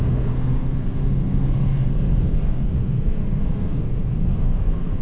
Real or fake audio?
fake